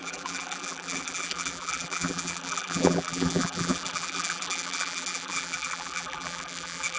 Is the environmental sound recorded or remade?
remade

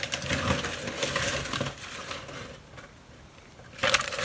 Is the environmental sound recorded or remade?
recorded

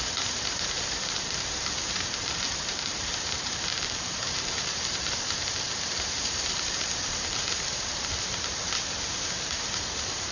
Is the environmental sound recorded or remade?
remade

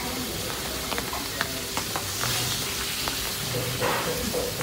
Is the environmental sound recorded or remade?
recorded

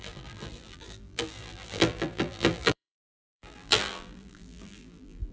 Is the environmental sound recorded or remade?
remade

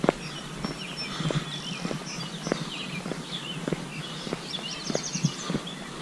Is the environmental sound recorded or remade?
recorded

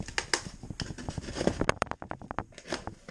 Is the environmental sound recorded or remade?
recorded